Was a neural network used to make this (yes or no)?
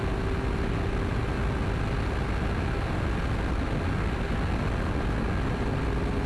no